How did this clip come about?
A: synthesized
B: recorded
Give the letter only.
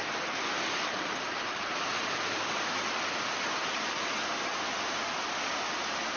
B